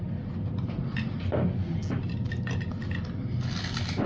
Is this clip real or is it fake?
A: real